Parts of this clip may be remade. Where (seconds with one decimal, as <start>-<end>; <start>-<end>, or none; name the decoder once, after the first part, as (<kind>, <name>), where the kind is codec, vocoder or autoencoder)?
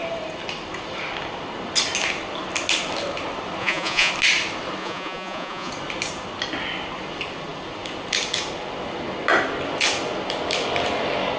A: 3.6-4.1 (vocoder, Vocos); 4.8-5.7